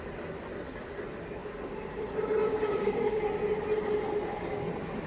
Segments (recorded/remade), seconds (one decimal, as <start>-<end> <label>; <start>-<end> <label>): 0.0-2.4 recorded; 2.4-3.2 remade; 3.2-5.1 recorded